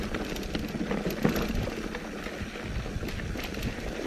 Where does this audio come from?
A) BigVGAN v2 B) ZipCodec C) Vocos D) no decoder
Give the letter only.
D